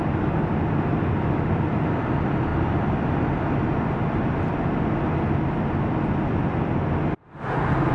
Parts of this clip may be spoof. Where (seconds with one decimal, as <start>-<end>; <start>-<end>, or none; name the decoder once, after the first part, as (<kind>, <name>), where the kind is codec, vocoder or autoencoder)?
none